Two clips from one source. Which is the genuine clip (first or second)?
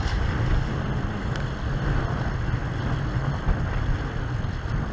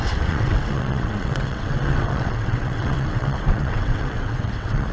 first